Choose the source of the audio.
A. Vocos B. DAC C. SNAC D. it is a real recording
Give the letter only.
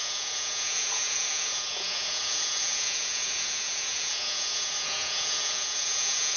A